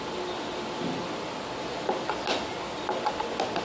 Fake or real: real